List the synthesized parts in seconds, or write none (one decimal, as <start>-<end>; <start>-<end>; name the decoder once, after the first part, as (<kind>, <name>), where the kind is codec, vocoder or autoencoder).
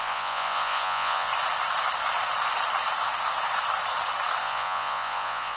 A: 0.0-1.3 (vocoder, Vocos); 4.4-5.6